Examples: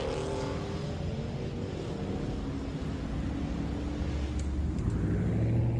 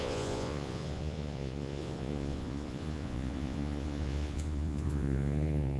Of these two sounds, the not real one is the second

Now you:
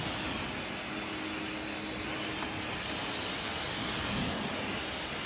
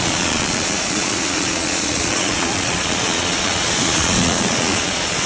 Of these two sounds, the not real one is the second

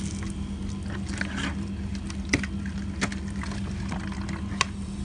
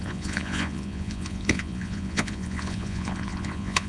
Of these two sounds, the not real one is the second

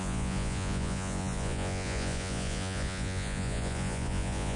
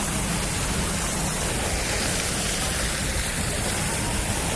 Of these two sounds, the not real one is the first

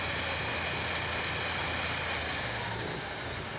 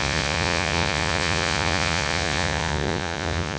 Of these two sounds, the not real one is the second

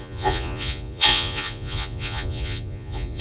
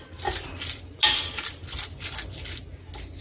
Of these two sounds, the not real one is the first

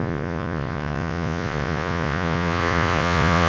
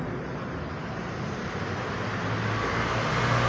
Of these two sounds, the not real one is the first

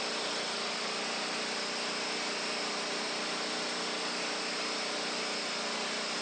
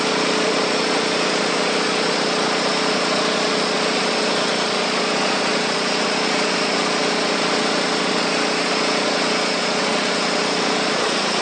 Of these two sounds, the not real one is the second